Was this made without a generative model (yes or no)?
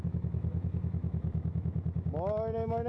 no